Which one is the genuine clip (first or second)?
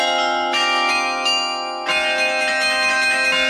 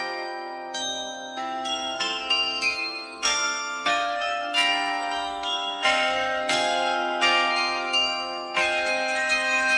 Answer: first